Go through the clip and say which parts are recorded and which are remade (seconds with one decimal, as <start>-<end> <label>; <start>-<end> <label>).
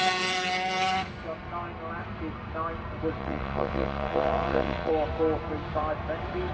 0.0-3.2 recorded; 3.2-4.9 remade; 4.9-6.5 recorded